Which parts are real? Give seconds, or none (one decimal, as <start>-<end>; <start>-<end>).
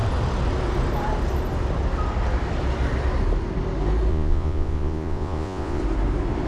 0.0-4.1; 5.8-6.5